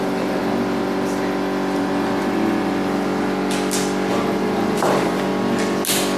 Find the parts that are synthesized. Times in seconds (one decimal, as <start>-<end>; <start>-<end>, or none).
0.0-0.4; 4.1-5.3